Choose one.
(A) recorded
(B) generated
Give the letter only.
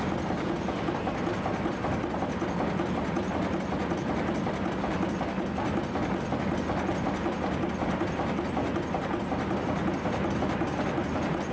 A